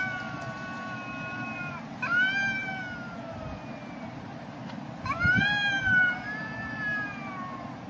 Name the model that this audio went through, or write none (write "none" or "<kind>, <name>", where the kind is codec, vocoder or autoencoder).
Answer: none